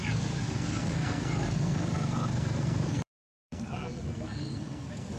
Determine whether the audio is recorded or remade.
remade